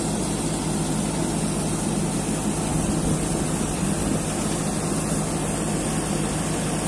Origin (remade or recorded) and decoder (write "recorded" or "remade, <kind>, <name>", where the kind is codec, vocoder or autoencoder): recorded